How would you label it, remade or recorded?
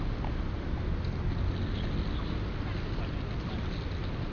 recorded